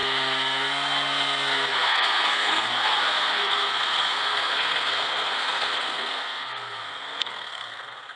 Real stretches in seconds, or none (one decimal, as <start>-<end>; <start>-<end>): none